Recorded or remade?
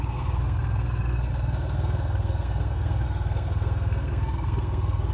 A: remade